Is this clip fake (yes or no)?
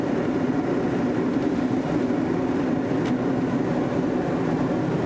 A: no